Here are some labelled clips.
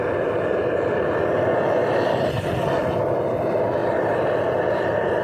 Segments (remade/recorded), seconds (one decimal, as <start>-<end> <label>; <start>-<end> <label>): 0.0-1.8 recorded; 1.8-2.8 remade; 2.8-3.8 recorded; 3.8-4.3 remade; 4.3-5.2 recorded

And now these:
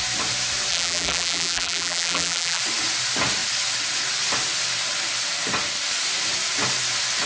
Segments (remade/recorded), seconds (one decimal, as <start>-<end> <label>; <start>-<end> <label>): 0.0-0.7 recorded; 0.7-2.6 remade; 2.6-7.3 recorded

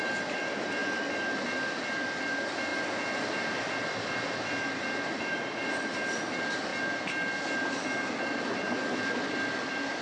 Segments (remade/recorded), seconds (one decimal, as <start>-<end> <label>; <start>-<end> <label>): 0.0-2.7 remade; 2.7-3.2 recorded; 3.2-6.7 remade; 6.7-8.1 recorded; 8.1-10.0 remade

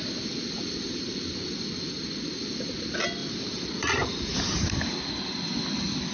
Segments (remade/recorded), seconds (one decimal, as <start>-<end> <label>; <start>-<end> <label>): 0.0-3.2 recorded; 3.2-4.7 remade; 4.7-6.1 recorded

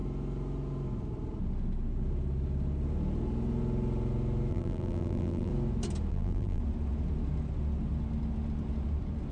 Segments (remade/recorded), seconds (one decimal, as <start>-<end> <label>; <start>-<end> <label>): 0.0-4.5 recorded; 4.5-5.5 remade; 5.5-6.1 recorded; 6.1-6.6 remade; 6.6-9.3 recorded

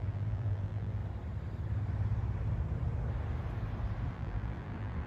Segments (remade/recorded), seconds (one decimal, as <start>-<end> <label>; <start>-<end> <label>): 0.0-1.0 remade; 1.0-4.1 recorded; 4.1-5.1 remade

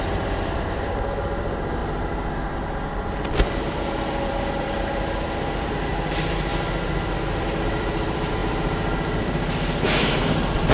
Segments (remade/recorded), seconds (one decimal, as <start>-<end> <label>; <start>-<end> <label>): 0.0-6.5 remade; 6.5-7.4 recorded; 7.4-10.7 remade